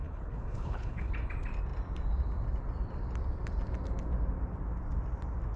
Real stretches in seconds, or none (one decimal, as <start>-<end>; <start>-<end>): 1.1-5.6